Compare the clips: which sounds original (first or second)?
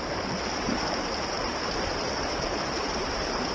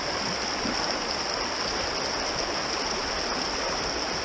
second